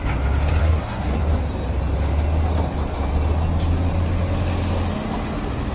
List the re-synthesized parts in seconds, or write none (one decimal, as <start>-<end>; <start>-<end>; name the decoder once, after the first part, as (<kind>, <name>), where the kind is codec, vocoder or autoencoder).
0.6-1.2 (codec, SNAC)